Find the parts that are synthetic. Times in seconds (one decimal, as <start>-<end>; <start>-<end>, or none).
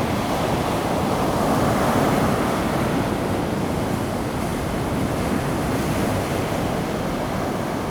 none